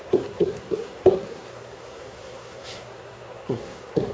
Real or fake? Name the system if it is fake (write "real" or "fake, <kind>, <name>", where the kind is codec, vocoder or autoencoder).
fake, codec, SNAC